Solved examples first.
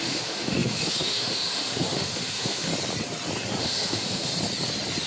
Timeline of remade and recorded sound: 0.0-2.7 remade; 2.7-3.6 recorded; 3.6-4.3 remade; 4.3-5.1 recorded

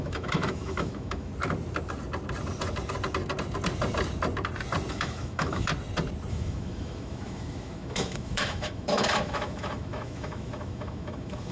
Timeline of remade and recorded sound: 0.0-1.3 remade; 1.3-4.9 recorded; 4.9-5.7 remade; 5.7-6.3 recorded; 6.3-11.5 remade